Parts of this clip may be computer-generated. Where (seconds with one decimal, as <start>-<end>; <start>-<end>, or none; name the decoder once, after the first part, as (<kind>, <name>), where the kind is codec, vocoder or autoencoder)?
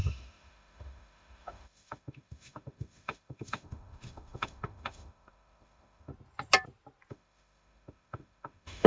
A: 0.0-6.1 (autoencoder, DAC-VAE); 7.1-8.9